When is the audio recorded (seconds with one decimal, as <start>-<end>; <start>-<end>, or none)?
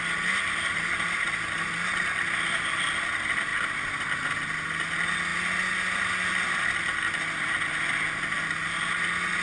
0.0-9.4